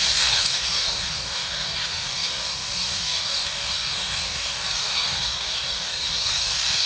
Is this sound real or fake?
fake